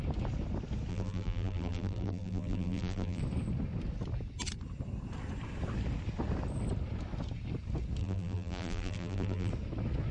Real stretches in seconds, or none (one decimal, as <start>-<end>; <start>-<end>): 0.0-0.9; 3.2-8.0; 9.5-10.1